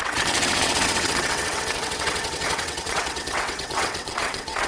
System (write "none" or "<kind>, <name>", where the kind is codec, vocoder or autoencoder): vocoder, WaveNeXt